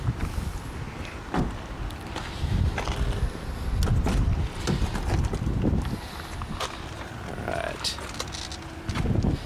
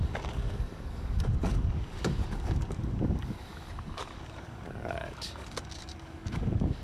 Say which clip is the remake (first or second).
second